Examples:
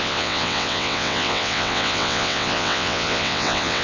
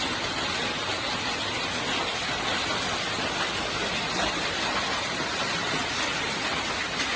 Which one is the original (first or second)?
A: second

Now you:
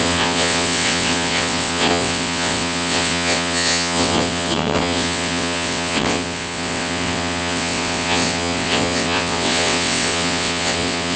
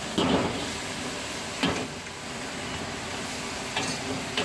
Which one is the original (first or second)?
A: second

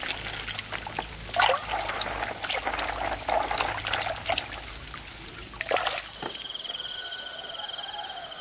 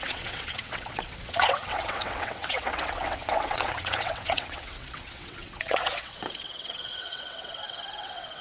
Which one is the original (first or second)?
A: first